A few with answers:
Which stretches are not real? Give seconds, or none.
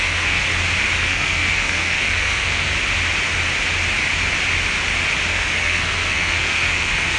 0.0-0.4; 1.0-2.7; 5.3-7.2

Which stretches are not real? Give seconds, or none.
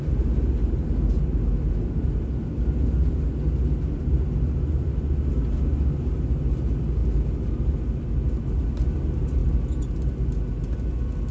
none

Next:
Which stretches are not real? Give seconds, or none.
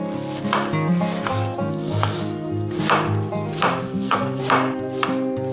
1.7-2.8; 3.8-4.4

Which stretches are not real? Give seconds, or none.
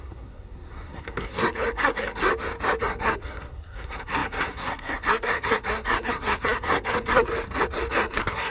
0.0-2.3; 2.8-7.3; 7.9-8.5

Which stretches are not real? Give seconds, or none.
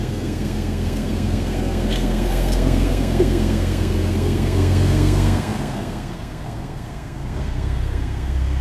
0.0-8.6